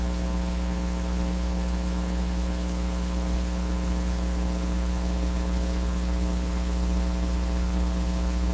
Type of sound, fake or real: fake